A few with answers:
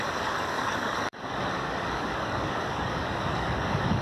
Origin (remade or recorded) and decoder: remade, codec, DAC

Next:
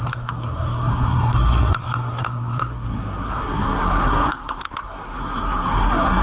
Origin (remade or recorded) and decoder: remade, codec, SNAC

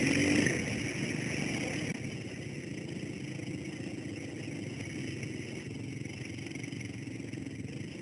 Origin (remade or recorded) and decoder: recorded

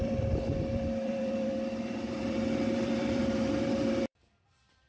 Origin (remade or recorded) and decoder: remade, vocoder, BigVGAN v2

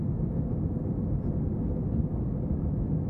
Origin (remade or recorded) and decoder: recorded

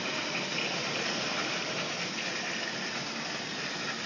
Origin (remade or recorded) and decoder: remade, vocoder, BigVGAN v2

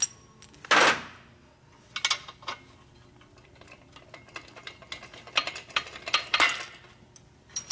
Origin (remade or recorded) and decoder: recorded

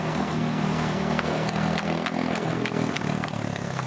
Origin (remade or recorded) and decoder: remade, codec, SNAC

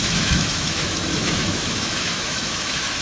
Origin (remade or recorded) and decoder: remade, autoencoder, DAC-VAE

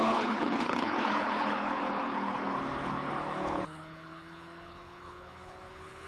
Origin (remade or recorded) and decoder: remade, codec, HILCodec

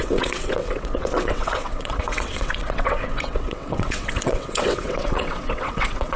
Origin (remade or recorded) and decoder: remade, vocoder, WaveNeXt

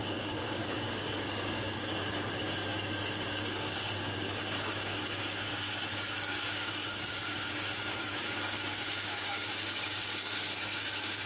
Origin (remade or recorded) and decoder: remade, codec, DAC